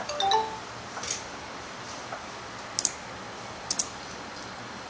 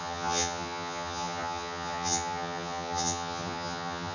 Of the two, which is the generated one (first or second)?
second